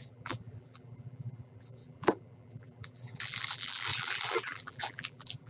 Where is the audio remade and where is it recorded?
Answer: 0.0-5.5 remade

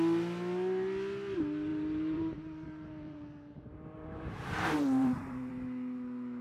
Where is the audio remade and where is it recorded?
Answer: 0.0-1.7 recorded; 1.7-5.5 remade; 5.5-6.4 recorded

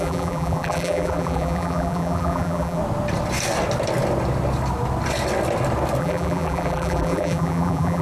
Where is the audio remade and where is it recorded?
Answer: 0.0-2.8 remade; 2.8-6.0 recorded; 6.0-8.0 remade

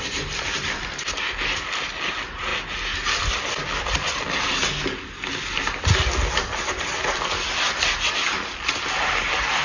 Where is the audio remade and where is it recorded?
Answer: 0.0-2.5 remade; 2.5-3.2 recorded; 3.2-4.6 remade; 4.6-5.3 recorded; 5.3-9.6 remade

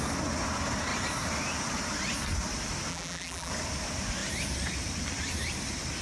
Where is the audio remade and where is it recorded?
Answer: 0.0-2.9 recorded; 2.9-3.5 remade; 3.5-6.0 recorded

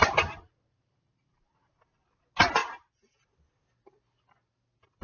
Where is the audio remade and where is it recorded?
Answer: 0.0-1.9 remade; 1.9-2.6 recorded; 2.6-3.2 remade; 3.2-5.0 recorded

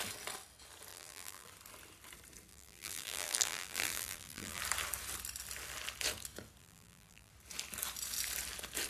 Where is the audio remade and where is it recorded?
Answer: 0.0-0.9 recorded; 0.9-1.5 remade; 1.5-2.5 recorded; 2.5-4.6 remade; 4.6-6.6 recorded; 6.6-7.3 remade; 7.3-8.9 recorded